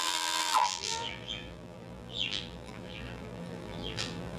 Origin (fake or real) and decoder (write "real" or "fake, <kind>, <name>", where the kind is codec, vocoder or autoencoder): fake, vocoder, BigVGAN v2